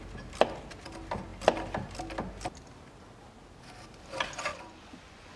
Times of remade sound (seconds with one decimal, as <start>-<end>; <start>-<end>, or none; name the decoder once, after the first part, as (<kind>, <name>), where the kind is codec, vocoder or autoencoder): 4.5-5.4 (vocoder, Vocos)